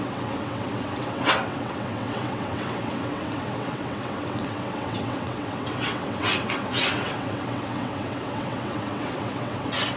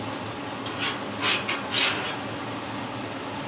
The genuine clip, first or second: second